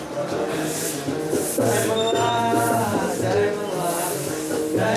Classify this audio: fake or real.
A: real